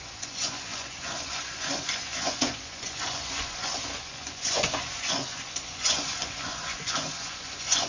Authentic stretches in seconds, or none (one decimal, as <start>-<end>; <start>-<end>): none